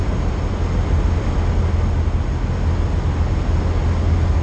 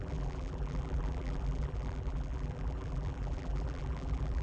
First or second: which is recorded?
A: first